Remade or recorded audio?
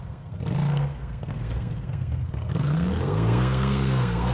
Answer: remade